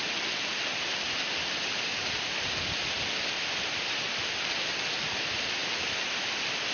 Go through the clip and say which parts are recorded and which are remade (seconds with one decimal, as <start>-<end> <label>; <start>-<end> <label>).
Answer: 0.0-6.7 recorded